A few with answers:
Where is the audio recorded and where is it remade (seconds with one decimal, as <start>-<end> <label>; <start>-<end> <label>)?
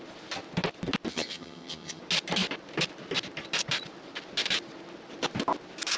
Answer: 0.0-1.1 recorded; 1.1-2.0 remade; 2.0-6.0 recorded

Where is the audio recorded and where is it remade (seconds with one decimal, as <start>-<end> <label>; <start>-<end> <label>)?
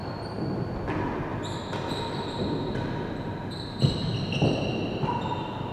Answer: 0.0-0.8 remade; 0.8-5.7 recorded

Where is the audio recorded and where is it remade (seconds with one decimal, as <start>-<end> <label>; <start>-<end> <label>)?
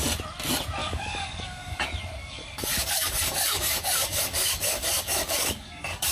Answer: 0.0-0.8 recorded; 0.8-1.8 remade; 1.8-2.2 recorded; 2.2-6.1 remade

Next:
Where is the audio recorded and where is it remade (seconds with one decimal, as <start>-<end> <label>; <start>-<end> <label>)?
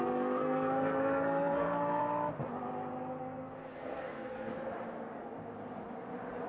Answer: 0.0-2.0 remade; 2.0-3.2 recorded; 3.2-4.5 remade; 4.5-6.5 recorded